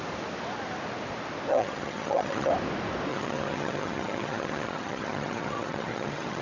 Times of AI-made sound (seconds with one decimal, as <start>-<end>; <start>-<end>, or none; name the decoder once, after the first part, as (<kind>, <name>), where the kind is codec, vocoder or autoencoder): 1.5-2.5 (vocoder, HiFi-GAN); 3.1-6.4